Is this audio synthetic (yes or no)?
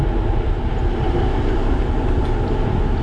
no